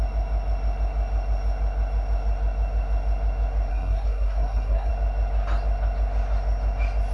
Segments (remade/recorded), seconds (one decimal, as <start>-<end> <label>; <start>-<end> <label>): 0.0-3.7 recorded; 3.7-4.9 remade; 4.9-7.1 recorded

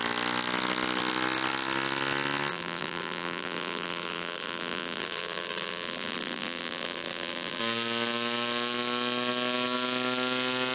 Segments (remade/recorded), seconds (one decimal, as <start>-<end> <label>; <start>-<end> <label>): 0.0-2.5 recorded; 2.5-7.6 remade; 7.6-10.7 recorded

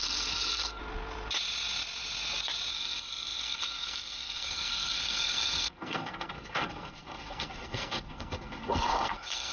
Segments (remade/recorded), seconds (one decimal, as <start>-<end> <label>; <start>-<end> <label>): 0.0-0.8 remade; 0.8-2.7 recorded; 2.7-9.5 remade

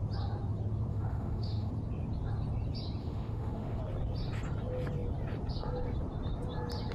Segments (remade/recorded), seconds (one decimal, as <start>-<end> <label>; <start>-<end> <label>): 0.0-0.9 recorded; 0.9-1.7 remade; 1.7-3.0 recorded; 3.0-3.8 remade; 3.8-6.9 recorded